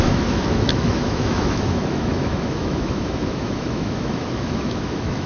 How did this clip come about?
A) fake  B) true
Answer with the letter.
A